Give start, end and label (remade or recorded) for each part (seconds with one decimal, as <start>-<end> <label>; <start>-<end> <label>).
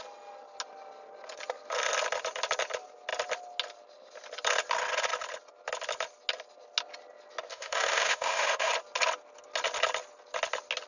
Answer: 0.0-7.5 recorded; 7.5-8.7 remade; 8.7-10.9 recorded